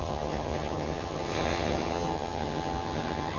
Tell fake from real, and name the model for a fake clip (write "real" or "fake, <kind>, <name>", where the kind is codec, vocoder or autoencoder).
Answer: fake, vocoder, HiFi-GAN